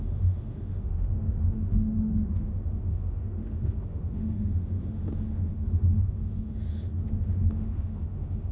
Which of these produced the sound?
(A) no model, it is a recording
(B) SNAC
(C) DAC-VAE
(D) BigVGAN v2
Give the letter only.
C